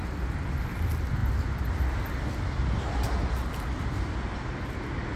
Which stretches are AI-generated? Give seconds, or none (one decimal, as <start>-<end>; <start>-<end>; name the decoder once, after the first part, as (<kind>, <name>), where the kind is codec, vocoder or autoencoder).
none